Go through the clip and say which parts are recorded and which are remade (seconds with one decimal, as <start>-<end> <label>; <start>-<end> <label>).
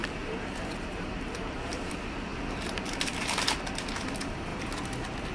0.0-1.9 remade; 1.9-5.3 recorded